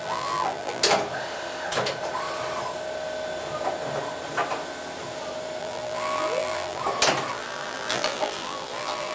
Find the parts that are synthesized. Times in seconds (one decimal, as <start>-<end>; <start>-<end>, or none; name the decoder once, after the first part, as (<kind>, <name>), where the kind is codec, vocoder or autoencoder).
0.0-0.8 (vocoder, BigVGAN v2); 5.6-6.8; 7.3-9.1